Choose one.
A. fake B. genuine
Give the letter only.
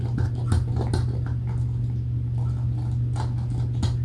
B